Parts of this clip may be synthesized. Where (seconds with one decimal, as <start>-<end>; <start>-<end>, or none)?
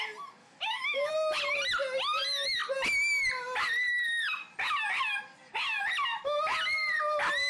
0.4-1.1